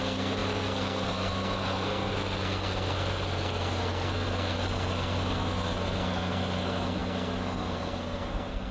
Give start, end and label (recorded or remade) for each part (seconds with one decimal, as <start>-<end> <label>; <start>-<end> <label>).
0.0-8.7 remade

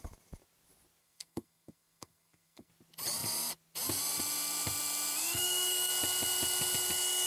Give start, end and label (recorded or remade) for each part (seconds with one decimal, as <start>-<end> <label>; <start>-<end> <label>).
0.0-1.0 recorded; 1.0-2.7 remade; 2.7-5.2 recorded; 5.2-5.9 remade; 5.9-7.3 recorded

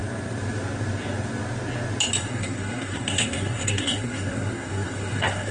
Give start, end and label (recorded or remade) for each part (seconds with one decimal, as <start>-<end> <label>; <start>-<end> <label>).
0.0-2.2 recorded; 2.2-5.5 remade

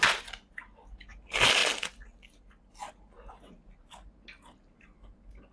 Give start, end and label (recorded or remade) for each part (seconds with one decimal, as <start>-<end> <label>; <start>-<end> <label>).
0.0-5.5 recorded

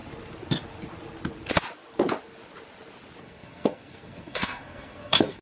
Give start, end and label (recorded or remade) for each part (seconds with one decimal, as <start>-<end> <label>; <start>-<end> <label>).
0.0-3.2 recorded; 3.2-5.4 remade